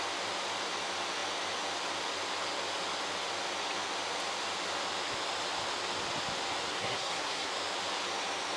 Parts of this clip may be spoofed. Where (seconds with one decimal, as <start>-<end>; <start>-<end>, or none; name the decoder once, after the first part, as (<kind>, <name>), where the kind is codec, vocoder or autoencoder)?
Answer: 6.7-7.5 (codec, SNAC)